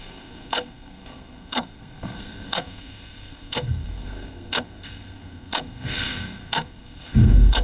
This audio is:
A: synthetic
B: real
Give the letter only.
A